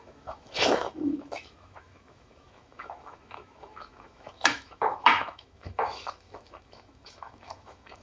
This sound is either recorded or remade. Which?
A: remade